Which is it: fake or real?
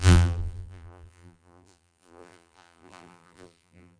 fake